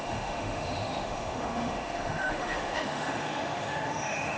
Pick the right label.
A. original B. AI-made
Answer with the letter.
B